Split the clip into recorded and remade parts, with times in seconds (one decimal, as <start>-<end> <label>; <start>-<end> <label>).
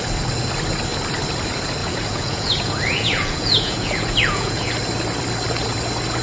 0.0-1.8 recorded; 1.8-4.7 remade; 4.7-6.2 recorded